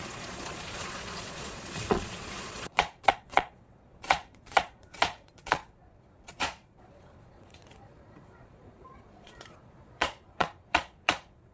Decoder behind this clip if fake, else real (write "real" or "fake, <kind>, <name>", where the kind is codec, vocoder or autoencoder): fake, vocoder, Vocos